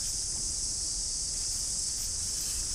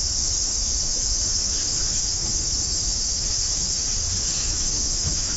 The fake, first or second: second